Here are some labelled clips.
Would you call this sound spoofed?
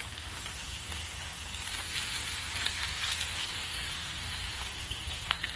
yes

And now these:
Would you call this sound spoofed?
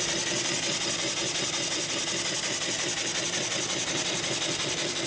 no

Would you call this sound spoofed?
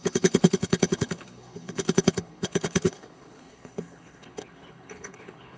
yes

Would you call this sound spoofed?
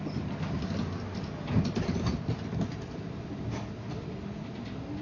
no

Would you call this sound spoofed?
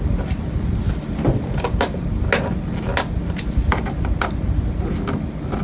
no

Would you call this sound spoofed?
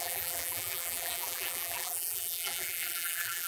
yes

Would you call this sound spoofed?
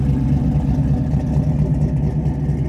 no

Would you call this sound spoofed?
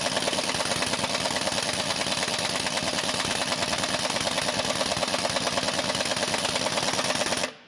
no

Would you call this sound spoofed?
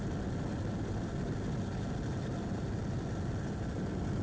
no